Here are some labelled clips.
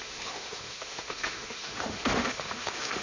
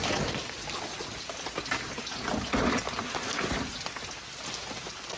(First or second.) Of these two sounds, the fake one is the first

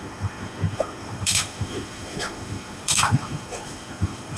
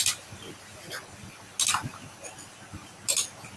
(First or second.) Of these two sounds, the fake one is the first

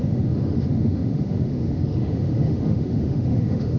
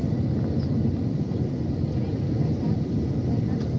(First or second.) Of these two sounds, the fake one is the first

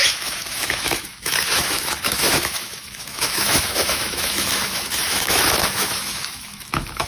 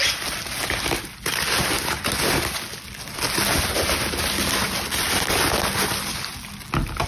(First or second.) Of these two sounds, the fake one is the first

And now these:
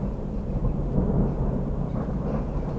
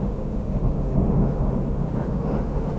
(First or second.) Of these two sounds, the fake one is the second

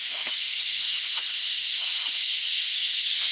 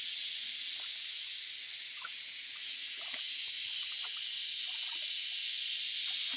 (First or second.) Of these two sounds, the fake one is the first